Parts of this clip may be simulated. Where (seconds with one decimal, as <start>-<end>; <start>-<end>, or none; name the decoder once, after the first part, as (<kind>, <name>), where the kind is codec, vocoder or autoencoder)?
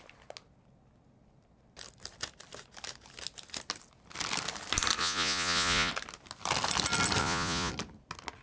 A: 5.0-5.9 (vocoder, Vocos); 7.2-7.7